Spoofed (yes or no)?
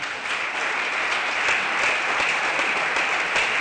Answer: no